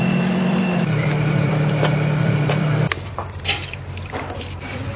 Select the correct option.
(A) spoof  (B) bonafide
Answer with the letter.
A